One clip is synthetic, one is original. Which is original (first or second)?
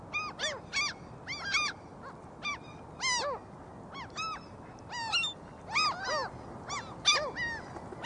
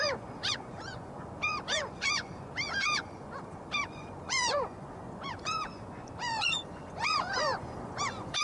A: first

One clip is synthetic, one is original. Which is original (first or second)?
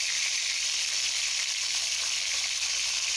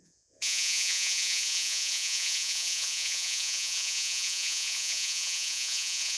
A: first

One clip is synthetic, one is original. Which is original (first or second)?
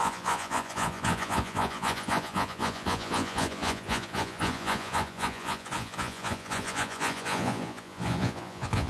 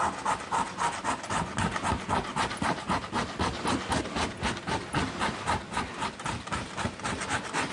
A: second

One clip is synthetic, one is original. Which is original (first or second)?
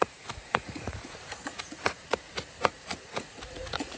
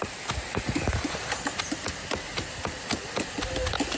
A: second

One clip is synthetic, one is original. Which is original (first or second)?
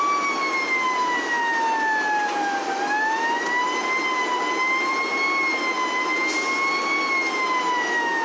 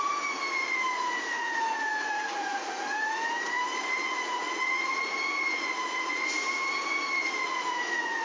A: first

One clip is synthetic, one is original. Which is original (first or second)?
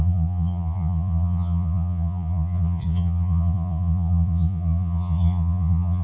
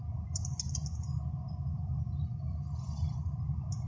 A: second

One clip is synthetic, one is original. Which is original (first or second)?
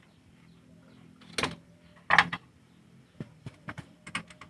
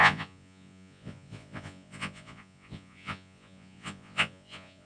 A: first